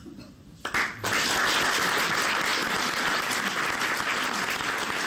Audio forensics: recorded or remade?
recorded